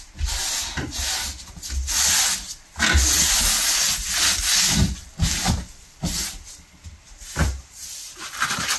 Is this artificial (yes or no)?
no